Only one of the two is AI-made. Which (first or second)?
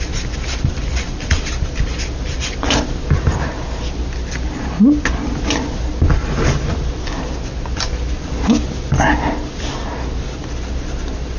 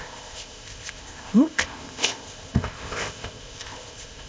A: second